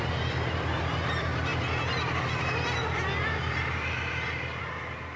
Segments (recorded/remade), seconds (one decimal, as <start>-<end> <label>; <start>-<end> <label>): 0.0-5.2 recorded